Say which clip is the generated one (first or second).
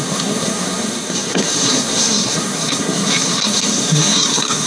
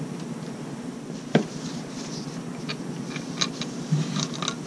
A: first